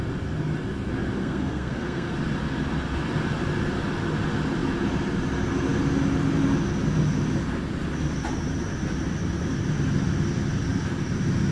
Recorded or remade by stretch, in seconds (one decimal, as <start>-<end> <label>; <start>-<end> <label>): 0.0-1.2 recorded; 1.2-2.1 remade; 2.1-11.5 recorded